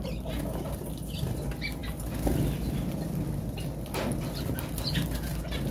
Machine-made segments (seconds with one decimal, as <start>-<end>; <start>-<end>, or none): none